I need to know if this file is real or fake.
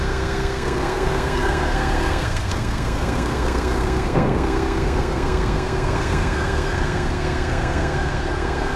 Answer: fake